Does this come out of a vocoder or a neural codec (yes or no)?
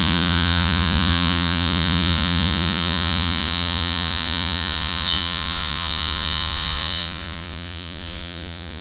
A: yes